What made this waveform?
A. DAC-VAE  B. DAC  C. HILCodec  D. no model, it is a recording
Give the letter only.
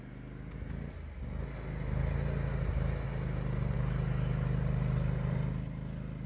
D